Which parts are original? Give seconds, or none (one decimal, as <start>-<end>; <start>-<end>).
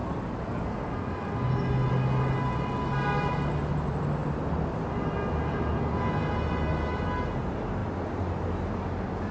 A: 0.0-9.3